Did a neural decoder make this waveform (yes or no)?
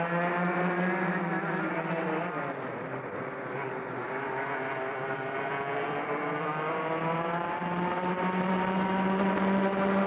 no